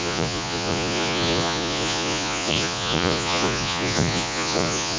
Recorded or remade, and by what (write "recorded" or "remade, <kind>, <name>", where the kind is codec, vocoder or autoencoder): remade, vocoder, Vocos